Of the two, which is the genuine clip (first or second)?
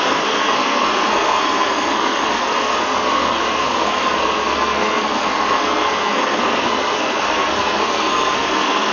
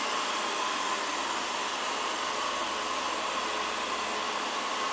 second